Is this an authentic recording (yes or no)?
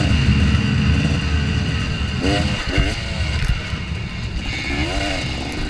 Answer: yes